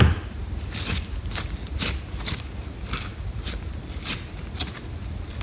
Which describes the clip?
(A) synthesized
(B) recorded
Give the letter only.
B